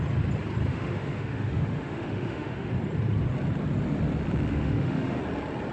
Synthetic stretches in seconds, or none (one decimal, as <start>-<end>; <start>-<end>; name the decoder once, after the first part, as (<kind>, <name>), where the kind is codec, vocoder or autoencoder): 0.7-2.7 (autoencoder, DAC-VAE); 4.5-5.2